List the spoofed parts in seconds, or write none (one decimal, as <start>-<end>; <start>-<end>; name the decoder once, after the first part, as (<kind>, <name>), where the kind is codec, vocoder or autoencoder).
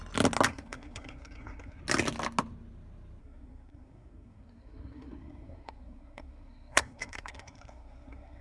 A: 0.5-1.8 (codec, SNAC); 3.2-8.4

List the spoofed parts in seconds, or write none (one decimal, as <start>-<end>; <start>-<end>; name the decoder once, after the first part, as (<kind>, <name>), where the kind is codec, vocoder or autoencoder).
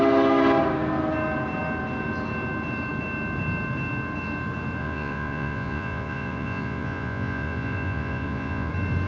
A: 4.8-8.7 (vocoder, Vocos)